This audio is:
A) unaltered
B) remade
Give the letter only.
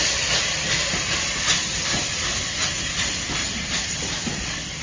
A